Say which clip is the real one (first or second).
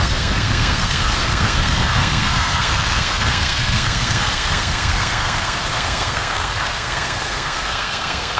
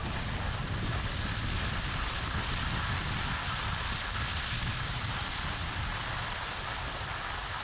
second